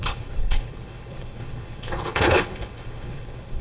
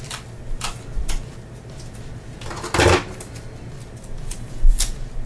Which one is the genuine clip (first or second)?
second